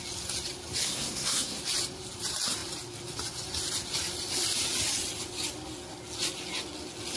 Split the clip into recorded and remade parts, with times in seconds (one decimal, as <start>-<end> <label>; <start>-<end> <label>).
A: 0.0-0.8 recorded; 0.8-1.6 remade; 1.6-7.2 recorded